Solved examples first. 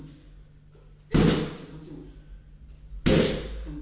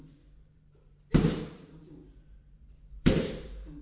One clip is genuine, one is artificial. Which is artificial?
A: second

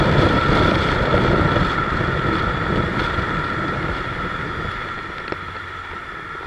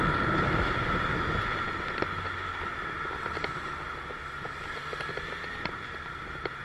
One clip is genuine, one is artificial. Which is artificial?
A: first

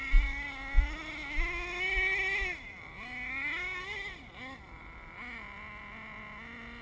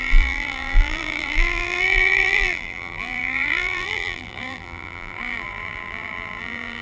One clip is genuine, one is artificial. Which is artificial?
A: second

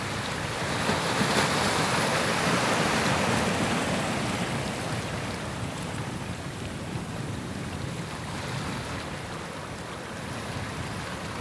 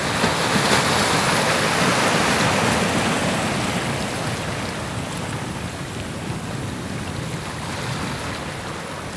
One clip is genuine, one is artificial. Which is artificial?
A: first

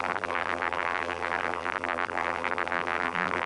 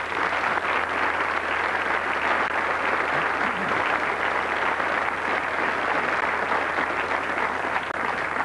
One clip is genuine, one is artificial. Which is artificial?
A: first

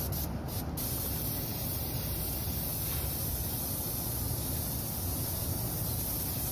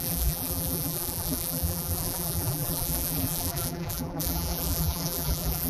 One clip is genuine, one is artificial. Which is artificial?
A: second